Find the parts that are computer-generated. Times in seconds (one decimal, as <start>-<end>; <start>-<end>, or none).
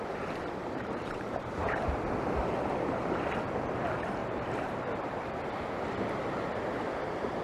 0.6-1.9; 4.2-6.6